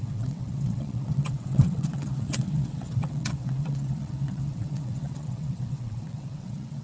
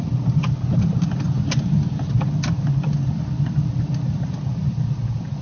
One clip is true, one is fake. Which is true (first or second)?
second